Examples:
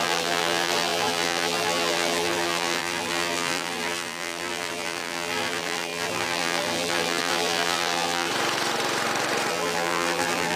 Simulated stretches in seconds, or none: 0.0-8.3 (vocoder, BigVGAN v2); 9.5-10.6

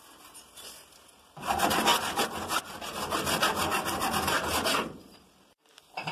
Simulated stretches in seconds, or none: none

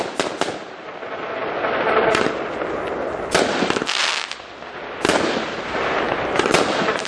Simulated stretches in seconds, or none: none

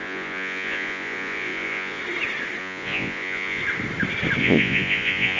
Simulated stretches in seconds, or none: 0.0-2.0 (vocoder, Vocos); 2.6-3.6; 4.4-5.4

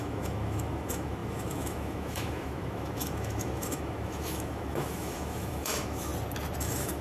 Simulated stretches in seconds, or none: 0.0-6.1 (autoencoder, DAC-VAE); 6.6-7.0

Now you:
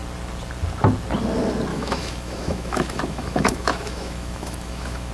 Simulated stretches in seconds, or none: 1.7-5.1 (autoencoder, DAC-VAE)